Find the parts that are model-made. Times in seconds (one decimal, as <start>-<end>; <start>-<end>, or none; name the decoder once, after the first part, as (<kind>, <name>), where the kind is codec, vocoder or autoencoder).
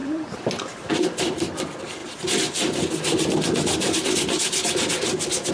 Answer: 0.0-0.9 (vocoder, BigVGAN v2)